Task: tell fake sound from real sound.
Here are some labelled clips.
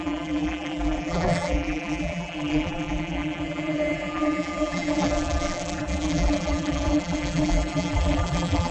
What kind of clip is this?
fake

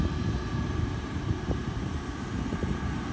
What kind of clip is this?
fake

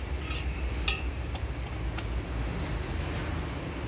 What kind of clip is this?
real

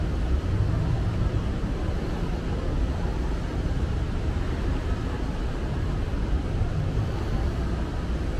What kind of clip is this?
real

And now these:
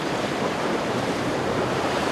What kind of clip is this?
fake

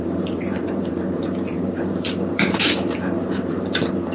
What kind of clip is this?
fake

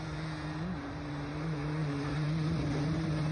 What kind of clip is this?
fake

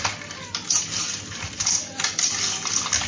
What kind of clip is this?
real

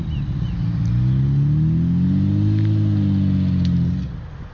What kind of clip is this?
real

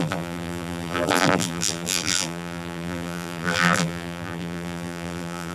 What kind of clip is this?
fake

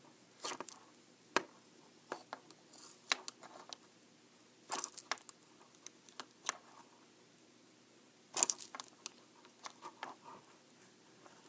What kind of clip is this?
real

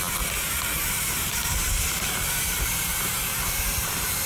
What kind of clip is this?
fake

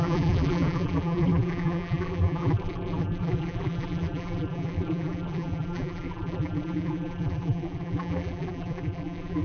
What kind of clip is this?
fake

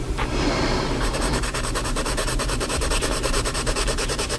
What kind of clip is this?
fake